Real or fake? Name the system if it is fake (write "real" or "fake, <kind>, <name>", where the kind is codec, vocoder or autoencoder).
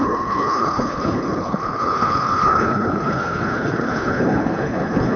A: fake, codec, HILCodec